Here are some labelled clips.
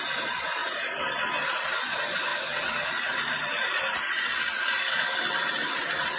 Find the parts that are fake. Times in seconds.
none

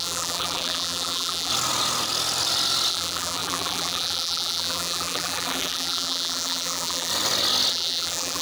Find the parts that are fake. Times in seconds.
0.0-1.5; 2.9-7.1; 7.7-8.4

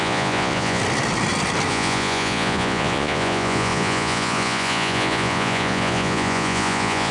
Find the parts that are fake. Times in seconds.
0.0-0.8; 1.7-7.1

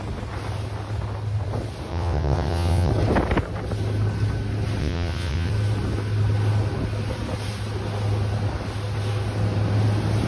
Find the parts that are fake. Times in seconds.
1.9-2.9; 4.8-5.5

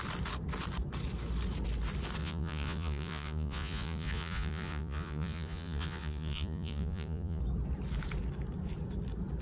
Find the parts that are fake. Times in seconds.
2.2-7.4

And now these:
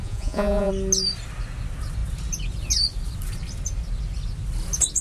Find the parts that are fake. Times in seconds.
0.0-0.7

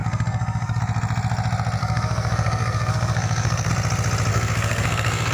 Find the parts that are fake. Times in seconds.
0.0-0.8; 1.8-3.7; 4.3-5.3